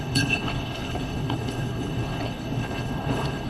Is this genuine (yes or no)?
no